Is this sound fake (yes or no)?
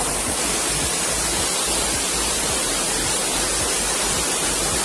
no